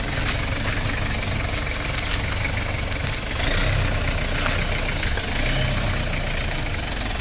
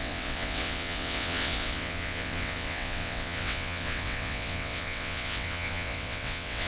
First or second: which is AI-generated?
second